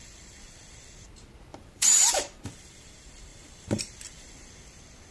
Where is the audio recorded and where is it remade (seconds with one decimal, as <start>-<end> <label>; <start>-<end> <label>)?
0.0-1.5 recorded; 1.5-2.4 remade; 2.4-3.3 recorded; 3.3-3.8 remade; 3.8-5.1 recorded